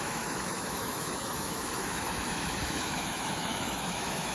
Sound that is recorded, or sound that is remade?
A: remade